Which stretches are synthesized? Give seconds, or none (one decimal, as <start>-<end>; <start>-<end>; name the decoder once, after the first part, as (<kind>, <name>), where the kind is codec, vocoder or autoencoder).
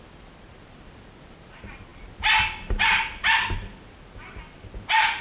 none